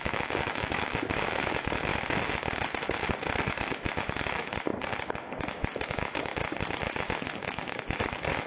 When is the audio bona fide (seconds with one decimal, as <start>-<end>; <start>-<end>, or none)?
1.9-3.4; 4.7-5.2; 6.3-6.8